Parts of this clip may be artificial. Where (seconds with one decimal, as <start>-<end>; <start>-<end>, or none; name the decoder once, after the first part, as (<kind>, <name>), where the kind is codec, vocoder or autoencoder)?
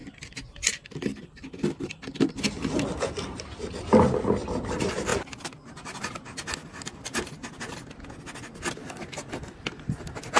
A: none